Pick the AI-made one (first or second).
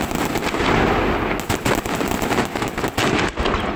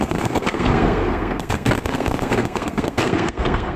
second